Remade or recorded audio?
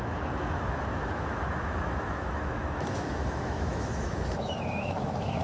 remade